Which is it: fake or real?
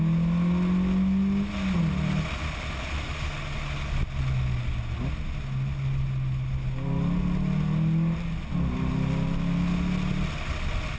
real